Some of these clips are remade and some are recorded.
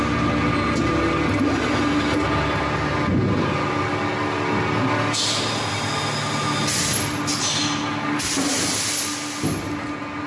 recorded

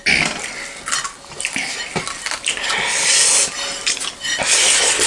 recorded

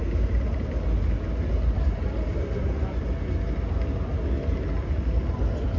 recorded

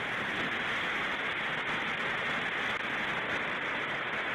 recorded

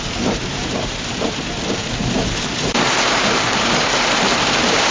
remade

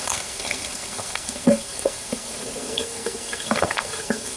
remade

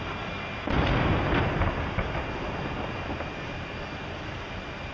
recorded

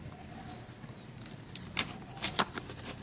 recorded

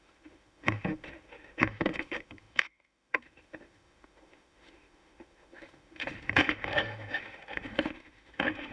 remade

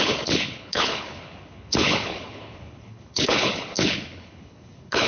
remade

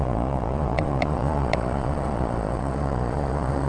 remade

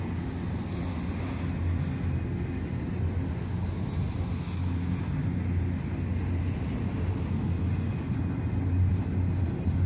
recorded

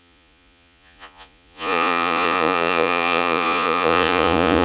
remade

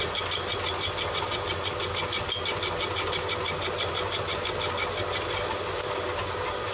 recorded